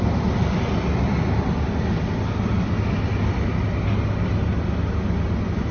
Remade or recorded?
recorded